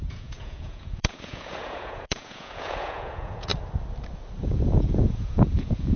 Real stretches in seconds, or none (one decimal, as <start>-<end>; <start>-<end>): 3.5-4.4